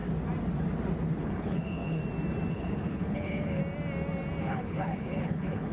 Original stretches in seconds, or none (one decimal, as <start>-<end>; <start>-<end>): 0.0-1.2; 2.0-2.5; 3.6-4.4